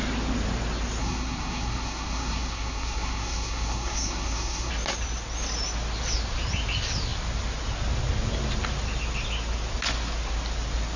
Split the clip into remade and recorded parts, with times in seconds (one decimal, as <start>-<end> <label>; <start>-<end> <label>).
0.0-1.0 recorded; 1.0-4.7 remade; 4.7-11.0 recorded